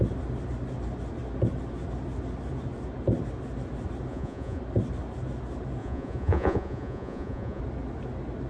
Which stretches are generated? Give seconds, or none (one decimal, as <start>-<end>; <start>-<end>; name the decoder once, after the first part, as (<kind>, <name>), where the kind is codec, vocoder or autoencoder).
4.1-4.6 (vocoder, Vocos); 5.8-7.6